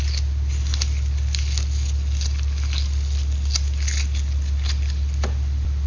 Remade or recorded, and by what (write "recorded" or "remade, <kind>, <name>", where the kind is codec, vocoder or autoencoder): recorded